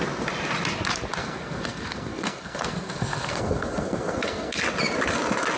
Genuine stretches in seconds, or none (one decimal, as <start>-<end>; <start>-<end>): 0.0-1.2; 4.6-5.6